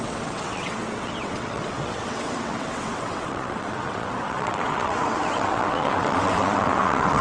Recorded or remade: remade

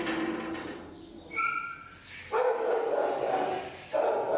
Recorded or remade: recorded